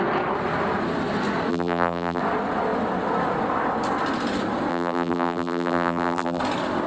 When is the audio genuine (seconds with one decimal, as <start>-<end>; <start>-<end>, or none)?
0.0-1.5; 2.2-4.7; 6.4-6.9